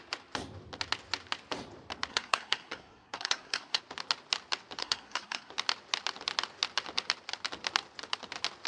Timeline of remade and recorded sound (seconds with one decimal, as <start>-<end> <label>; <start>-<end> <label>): 0.0-2.1 recorded; 2.1-3.8 remade; 3.8-4.8 recorded; 4.8-5.5 remade; 5.5-8.7 recorded